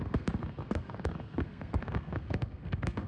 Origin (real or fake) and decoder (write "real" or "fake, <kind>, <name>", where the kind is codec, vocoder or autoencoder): fake, codec, SNAC